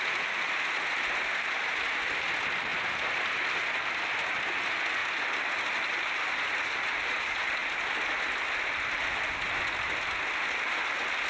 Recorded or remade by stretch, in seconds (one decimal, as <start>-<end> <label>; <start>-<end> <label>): 0.0-11.3 recorded